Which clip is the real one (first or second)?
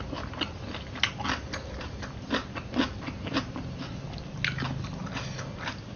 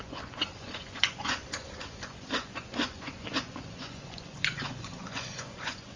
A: first